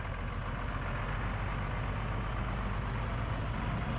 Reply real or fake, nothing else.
real